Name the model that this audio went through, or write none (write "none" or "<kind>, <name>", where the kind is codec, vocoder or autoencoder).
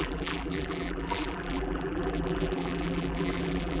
vocoder, BigVGAN v2